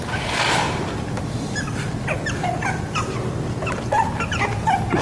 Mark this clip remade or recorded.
recorded